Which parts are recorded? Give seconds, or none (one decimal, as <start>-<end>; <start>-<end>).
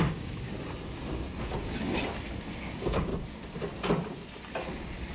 0.5-1.6; 2.0-2.6; 3.1-5.1